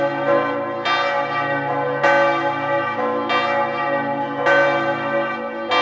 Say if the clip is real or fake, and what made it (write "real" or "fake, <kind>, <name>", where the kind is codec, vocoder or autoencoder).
real